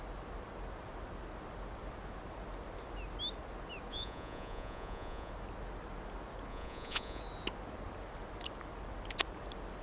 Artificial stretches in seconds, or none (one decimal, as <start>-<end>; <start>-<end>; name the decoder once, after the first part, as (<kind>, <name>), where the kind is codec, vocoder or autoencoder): 3.9-5.3 (vocoder, Vocos); 6.5-7.2